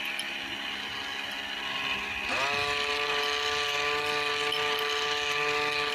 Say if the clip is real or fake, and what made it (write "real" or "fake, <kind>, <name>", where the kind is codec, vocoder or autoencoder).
real